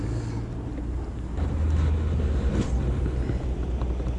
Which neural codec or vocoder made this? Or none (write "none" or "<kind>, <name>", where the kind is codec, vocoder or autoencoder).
none